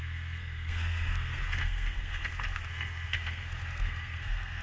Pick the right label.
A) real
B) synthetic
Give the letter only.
B